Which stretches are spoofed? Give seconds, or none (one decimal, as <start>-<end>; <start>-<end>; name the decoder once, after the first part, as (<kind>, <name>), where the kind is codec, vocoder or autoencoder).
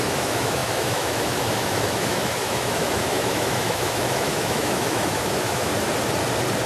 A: 0.0-5.7 (autoencoder, DAC-VAE)